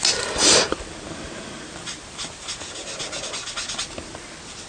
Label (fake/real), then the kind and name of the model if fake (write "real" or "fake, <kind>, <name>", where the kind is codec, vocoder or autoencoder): real